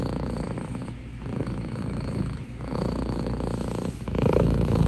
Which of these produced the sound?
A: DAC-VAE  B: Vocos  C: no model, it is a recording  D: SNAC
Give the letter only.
A